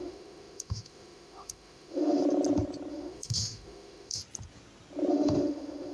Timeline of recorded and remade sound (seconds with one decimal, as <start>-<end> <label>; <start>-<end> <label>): 0.0-2.2 remade; 2.2-2.9 recorded; 2.9-4.2 remade; 4.2-5.1 recorded; 5.1-5.9 remade